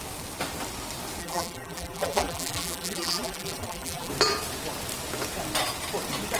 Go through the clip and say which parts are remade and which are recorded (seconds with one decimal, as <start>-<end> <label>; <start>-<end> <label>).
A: 0.0-1.2 recorded; 1.2-4.1 remade; 4.1-6.4 recorded